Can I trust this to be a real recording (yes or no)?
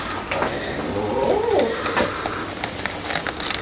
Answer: yes